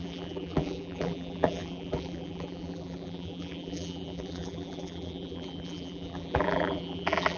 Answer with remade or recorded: remade